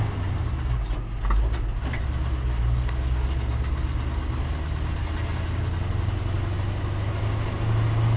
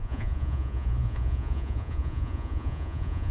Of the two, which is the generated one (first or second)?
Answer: second